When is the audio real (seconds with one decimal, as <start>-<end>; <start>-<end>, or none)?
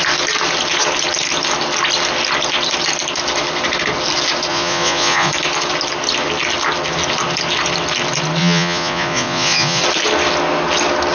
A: 0.0-4.5; 5.3-8.4; 9.8-11.1